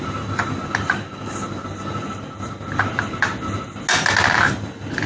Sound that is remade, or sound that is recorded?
recorded